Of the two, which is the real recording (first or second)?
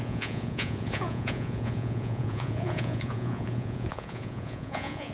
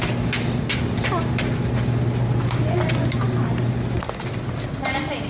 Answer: second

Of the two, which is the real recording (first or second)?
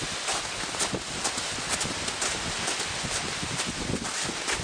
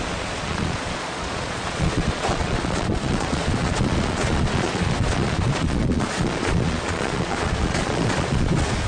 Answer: first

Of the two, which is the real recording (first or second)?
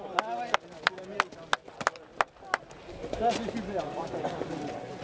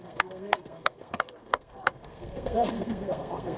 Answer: first